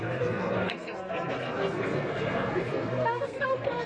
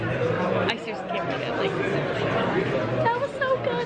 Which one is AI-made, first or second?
first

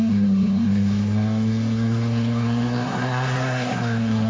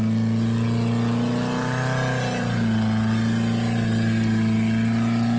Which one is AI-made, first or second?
first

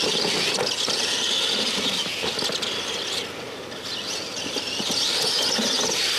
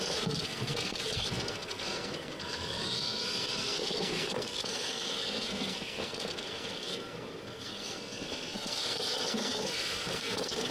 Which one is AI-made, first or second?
second